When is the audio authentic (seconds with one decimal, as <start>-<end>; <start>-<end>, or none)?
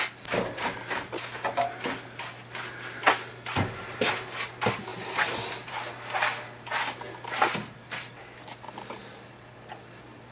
0.0-10.3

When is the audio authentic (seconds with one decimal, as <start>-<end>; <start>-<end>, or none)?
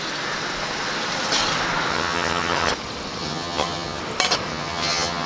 0.0-1.9; 2.7-3.2; 4.0-4.5